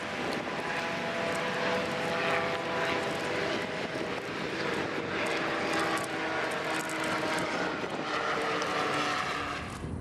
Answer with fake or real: real